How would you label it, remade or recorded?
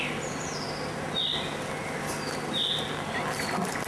recorded